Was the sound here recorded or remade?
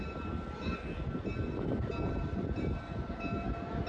recorded